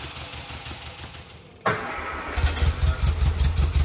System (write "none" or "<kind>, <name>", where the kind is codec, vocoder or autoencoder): none